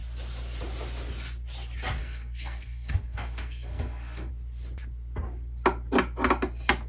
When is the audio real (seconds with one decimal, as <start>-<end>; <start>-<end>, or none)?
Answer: 0.0-2.0; 4.3-6.9